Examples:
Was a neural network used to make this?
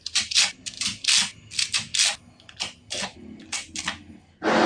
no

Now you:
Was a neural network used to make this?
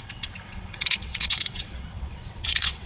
yes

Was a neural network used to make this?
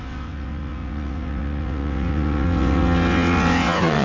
yes